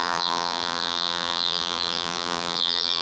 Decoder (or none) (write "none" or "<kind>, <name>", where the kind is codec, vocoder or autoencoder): vocoder, BigVGAN v2